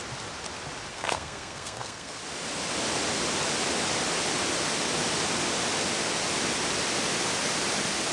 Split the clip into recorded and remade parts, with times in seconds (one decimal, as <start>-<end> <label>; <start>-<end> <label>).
0.0-0.9 recorded; 0.9-2.2 remade; 2.2-8.1 recorded